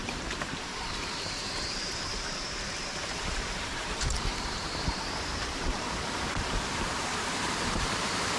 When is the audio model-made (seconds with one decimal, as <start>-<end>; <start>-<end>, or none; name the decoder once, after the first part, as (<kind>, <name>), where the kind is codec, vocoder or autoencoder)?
0.0-8.4 (vocoder, BigVGAN v2)